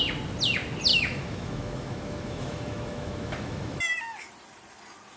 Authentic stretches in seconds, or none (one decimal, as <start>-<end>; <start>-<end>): 0.0-0.9; 3.8-5.2